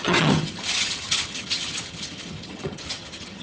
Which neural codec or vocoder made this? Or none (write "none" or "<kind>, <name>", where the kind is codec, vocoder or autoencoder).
vocoder, HiFi-GAN